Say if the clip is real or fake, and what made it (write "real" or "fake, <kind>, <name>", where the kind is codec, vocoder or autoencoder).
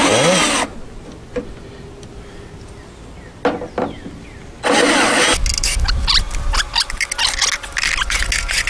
real